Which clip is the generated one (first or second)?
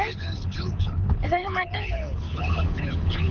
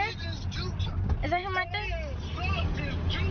first